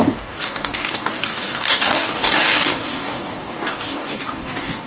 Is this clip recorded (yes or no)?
no